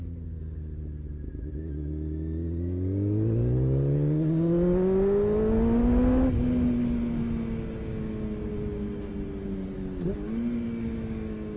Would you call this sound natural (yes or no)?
yes